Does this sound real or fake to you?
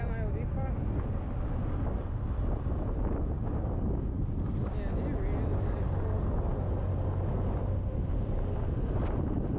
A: real